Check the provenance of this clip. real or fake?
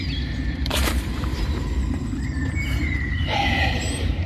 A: fake